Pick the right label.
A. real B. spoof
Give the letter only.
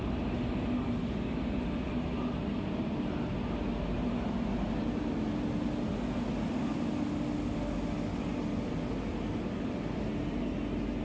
A